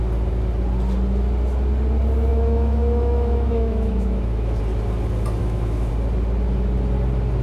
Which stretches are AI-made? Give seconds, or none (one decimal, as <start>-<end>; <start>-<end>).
2.3-4.6; 5.4-5.9